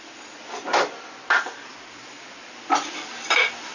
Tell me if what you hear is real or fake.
real